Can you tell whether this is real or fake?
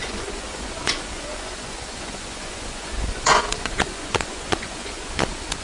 fake